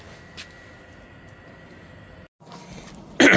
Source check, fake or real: real